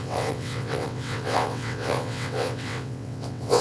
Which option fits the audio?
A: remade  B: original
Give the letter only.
A